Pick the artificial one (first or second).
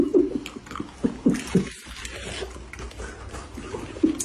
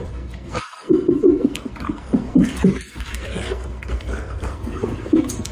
second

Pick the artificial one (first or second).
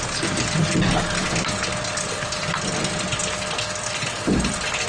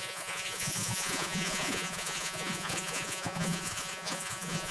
second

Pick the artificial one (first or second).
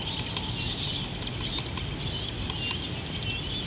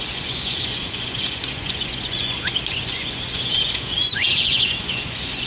second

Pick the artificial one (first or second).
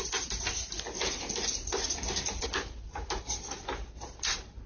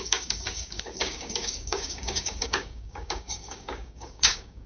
second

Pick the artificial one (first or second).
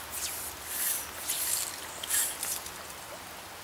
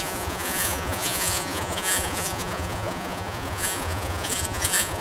second